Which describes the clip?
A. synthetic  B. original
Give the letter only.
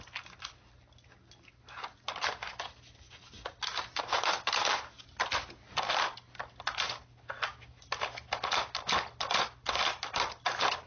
B